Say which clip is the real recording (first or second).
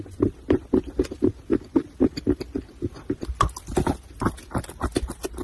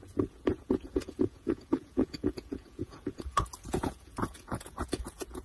first